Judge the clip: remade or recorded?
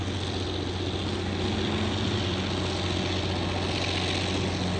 recorded